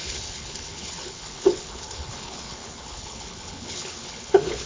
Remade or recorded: remade